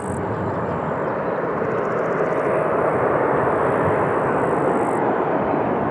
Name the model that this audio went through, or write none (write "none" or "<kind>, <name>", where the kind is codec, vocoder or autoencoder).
none